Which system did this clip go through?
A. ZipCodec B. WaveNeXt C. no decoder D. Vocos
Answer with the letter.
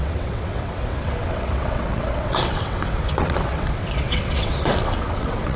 B